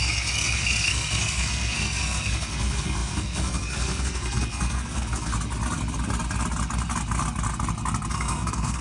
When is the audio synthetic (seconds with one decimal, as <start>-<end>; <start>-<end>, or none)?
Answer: 0.0-5.3; 8.1-8.8